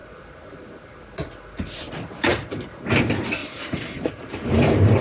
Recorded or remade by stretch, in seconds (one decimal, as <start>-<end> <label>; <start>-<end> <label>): 0.0-3.4 recorded; 3.4-5.0 remade